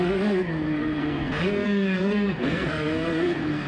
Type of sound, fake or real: fake